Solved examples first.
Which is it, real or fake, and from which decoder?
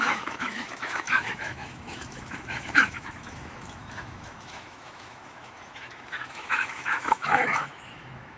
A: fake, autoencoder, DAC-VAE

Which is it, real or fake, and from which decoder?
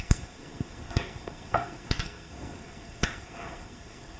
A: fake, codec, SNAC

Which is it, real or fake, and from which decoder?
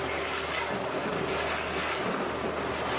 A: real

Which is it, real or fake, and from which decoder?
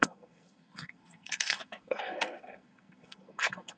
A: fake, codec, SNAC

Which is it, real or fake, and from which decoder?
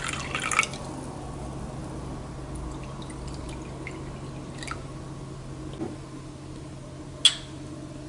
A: real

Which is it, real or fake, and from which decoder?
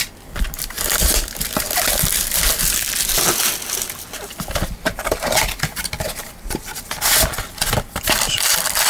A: real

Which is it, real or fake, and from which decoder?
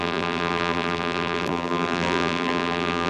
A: fake, vocoder, BigVGAN v2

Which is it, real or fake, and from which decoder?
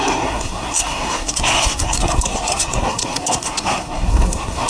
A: fake, codec, SNAC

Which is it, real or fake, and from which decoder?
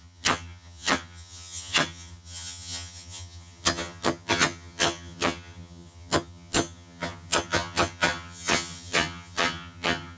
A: fake, vocoder, HiFi-GAN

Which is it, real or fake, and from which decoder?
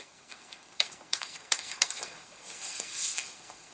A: fake, codec, SNAC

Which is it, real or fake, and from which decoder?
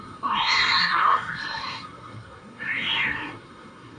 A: fake, codec, SNAC